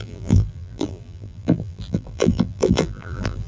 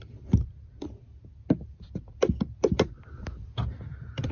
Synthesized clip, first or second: first